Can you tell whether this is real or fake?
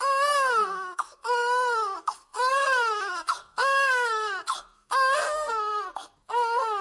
fake